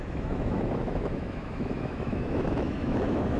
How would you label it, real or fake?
fake